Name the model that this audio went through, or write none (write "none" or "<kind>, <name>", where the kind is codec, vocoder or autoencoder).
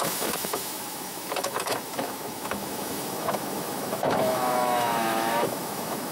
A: autoencoder, DAC-VAE